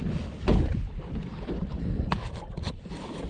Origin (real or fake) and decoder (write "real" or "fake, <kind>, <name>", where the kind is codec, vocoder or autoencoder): fake, vocoder, BigVGAN v2